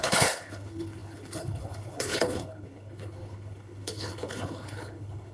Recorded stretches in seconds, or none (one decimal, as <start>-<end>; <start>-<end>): none